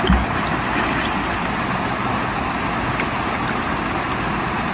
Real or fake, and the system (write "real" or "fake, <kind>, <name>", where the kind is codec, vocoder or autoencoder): real